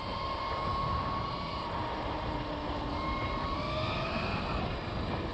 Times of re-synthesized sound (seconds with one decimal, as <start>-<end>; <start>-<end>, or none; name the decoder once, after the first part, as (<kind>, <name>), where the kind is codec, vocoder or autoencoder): 3.7-4.4 (codec, SNAC)